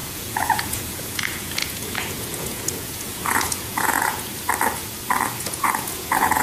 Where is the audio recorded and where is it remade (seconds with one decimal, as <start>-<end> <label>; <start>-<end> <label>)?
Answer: 0.0-4.3 remade; 4.3-5.4 recorded; 5.4-6.4 remade